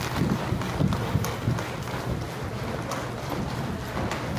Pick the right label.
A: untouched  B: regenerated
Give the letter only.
A